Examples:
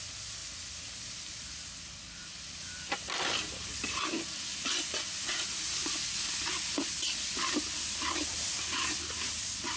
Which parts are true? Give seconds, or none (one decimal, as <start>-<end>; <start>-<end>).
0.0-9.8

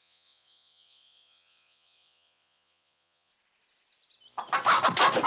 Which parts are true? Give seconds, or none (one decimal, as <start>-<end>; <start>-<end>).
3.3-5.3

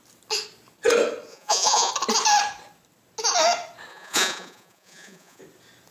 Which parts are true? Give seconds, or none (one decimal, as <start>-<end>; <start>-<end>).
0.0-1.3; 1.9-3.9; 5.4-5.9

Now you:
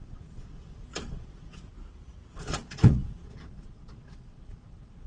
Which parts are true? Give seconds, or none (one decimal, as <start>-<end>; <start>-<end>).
1.7-2.3

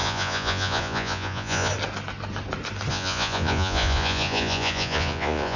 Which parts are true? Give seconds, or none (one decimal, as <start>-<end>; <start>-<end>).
1.7-2.9

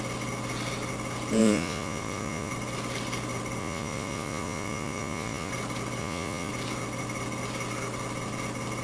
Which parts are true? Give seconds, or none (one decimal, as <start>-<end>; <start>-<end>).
0.0-1.4; 2.5-3.6; 5.5-6.0; 6.5-8.8

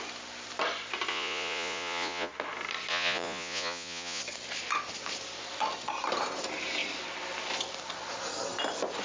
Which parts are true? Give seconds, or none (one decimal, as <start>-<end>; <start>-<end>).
0.0-1.1; 2.3-2.9; 4.2-9.0

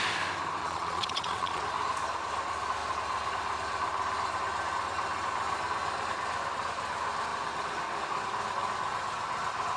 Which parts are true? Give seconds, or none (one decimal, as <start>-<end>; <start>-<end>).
0.0-0.6; 1.6-9.8